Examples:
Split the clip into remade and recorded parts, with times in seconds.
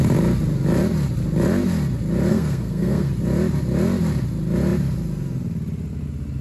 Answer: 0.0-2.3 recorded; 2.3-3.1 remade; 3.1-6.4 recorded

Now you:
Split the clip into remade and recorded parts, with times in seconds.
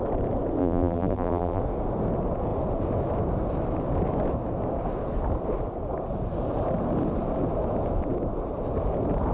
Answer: 0.0-0.6 recorded; 0.6-1.6 remade; 1.6-9.3 recorded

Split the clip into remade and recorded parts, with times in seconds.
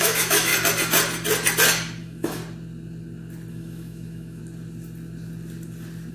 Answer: 0.0-0.5 remade; 0.5-2.0 recorded; 2.0-2.4 remade; 2.4-3.5 recorded; 3.5-4.4 remade; 4.4-6.1 recorded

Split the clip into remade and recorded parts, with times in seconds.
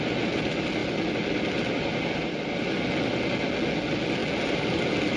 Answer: 0.0-0.8 recorded; 0.8-1.7 remade; 1.7-4.2 recorded; 4.2-4.8 remade; 4.8-5.2 recorded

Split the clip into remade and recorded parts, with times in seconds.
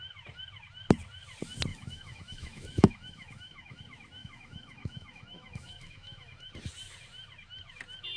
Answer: 0.0-1.7 recorded; 1.7-3.8 remade; 3.8-4.2 recorded; 4.2-6.5 remade; 6.5-8.2 recorded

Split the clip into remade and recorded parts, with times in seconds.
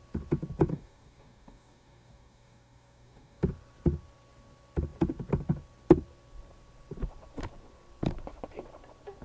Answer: 0.0-0.7 recorded; 0.7-3.4 remade; 3.4-9.2 recorded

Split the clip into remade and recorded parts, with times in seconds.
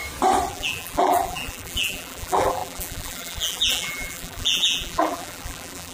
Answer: 0.0-0.5 recorded; 0.5-5.9 remade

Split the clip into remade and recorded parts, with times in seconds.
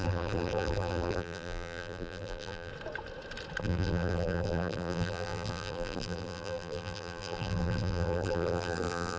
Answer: 0.0-2.7 remade; 2.7-3.6 recorded; 3.6-9.2 remade